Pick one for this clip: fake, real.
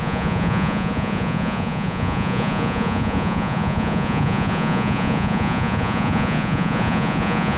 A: fake